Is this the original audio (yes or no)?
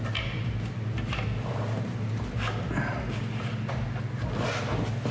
yes